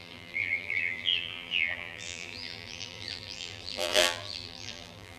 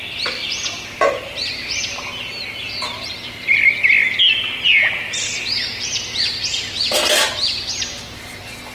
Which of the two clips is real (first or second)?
second